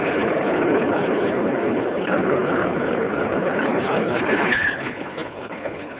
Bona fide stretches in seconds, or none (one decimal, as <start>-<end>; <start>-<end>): none